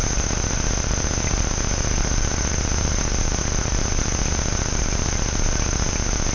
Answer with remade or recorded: recorded